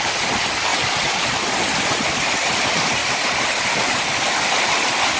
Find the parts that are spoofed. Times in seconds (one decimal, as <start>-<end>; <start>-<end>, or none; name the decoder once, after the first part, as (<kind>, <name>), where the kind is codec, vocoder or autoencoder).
0.7-1.6 (vocoder, BigVGAN v2); 3.0-4.1